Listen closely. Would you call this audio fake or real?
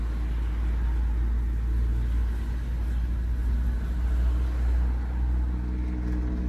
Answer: real